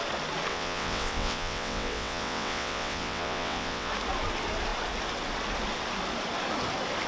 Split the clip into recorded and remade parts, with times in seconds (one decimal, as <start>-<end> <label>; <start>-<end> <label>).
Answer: 0.0-0.5 recorded; 0.5-3.9 remade; 3.9-7.1 recorded